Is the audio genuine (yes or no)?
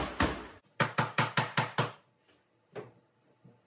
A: yes